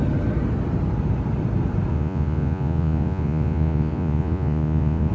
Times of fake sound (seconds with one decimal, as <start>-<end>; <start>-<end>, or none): 1.9-5.1